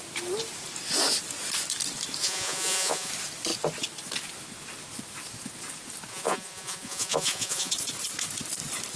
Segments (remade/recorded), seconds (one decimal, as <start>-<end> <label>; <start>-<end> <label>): 0.0-2.2 recorded; 2.2-3.1 remade; 3.1-6.1 recorded; 6.1-7.7 remade; 7.7-9.0 recorded